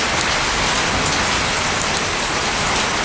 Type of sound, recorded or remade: recorded